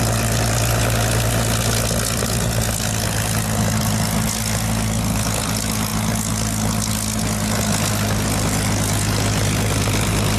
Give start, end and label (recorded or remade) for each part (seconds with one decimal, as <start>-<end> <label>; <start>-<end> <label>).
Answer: 0.0-10.4 recorded